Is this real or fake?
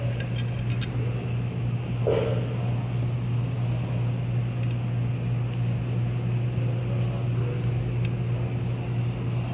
real